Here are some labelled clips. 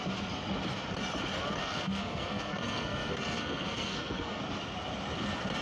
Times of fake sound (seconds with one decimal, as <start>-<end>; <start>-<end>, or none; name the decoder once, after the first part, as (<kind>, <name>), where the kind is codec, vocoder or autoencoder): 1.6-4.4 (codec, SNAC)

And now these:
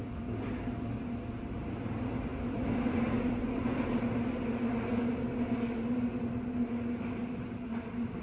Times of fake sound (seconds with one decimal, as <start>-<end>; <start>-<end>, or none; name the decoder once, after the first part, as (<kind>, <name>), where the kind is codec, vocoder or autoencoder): none

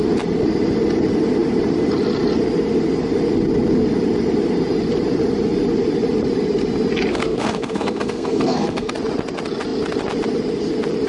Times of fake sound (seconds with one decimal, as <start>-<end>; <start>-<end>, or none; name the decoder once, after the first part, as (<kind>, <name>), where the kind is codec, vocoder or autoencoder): 7.1-8.9 (codec, SNAC)

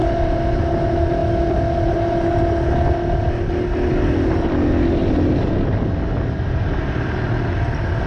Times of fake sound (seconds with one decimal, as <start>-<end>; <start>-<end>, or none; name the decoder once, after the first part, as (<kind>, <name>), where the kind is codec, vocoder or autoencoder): 0.0-0.6 (vocoder, BigVGAN v2)

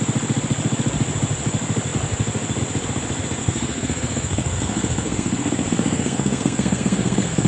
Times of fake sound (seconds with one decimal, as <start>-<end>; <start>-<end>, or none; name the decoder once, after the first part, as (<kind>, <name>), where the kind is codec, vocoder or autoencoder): 3.4-7.5 (codec, SNAC)

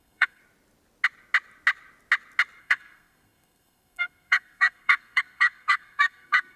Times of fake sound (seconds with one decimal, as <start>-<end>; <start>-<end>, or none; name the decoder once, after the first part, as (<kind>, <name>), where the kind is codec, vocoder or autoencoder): 0.0-0.4 (codec, SNAC); 2.6-6.6

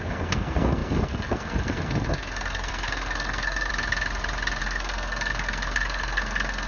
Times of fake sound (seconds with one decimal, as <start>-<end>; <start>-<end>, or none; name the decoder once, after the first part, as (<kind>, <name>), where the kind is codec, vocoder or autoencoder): 0.0-3.7 (codec, SNAC); 4.6-6.7

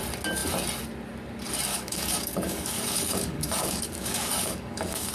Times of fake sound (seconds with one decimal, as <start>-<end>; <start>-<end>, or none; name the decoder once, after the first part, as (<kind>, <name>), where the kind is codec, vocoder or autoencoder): 1.7-5.1 (codec, DAC)